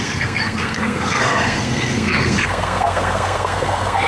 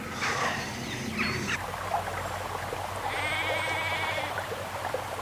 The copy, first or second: first